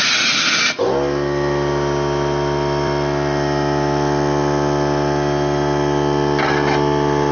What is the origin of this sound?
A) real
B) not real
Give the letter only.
A